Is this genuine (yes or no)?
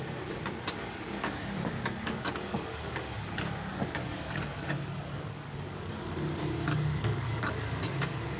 no